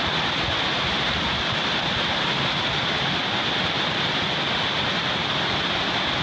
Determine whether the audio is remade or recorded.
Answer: recorded